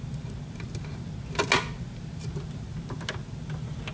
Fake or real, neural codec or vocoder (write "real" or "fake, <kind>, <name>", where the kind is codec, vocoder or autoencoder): real